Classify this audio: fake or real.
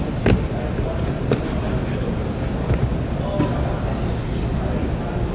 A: real